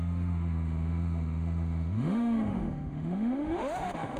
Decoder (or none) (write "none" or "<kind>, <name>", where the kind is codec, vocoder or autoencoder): autoencoder, DAC-VAE